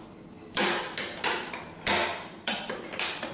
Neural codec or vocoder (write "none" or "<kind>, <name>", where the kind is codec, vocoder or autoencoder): vocoder, BigVGAN v2